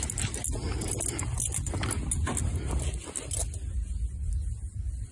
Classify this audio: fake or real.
real